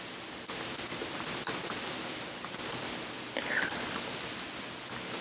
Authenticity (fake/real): real